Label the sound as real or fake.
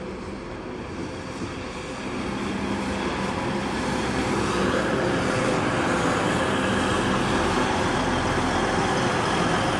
real